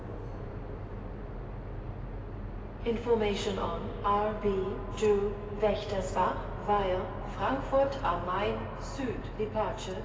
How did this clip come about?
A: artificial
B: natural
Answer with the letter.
B